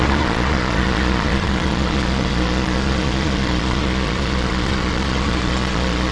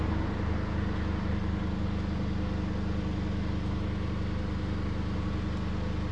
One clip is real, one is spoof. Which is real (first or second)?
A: second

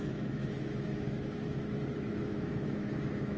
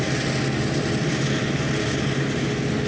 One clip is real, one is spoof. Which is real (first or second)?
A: second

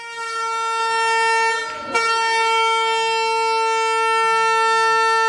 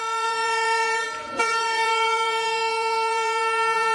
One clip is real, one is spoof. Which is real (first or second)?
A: first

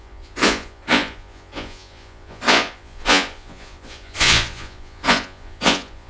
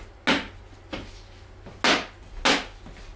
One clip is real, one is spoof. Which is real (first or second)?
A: second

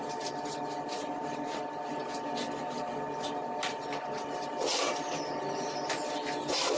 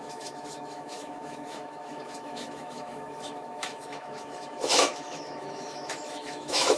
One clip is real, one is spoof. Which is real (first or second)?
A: first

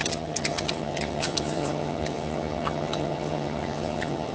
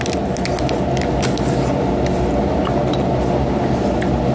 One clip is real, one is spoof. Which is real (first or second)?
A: second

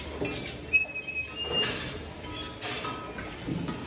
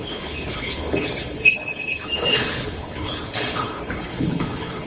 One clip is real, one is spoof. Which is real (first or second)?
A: first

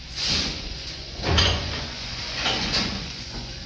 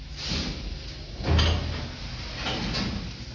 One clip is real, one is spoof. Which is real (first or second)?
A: second